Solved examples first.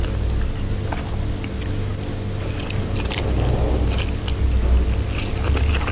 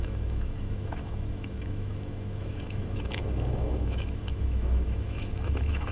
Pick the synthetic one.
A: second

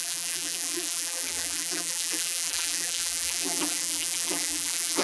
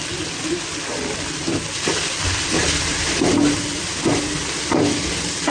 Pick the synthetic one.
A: first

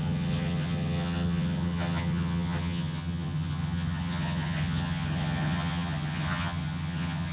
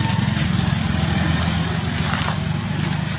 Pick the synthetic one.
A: first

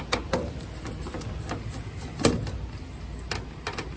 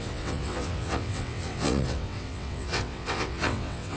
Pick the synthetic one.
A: second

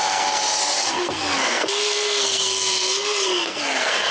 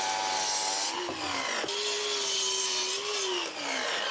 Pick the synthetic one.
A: first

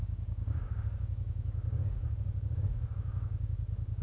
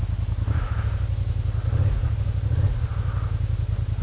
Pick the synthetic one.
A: first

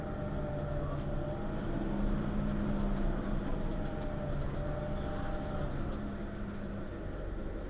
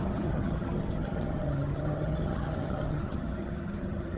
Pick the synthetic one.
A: second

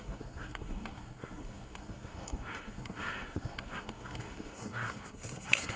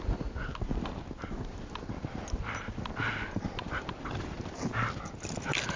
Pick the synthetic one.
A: first